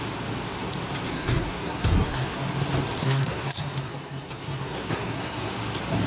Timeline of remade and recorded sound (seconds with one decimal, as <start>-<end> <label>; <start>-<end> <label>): 0.0-1.1 recorded; 1.1-2.2 remade; 2.2-3.0 recorded; 3.0-5.5 remade; 5.5-6.1 recorded